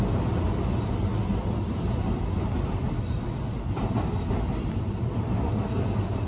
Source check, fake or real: real